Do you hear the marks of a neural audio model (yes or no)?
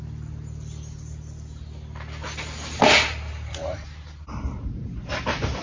no